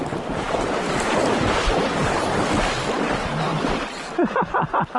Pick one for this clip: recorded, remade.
remade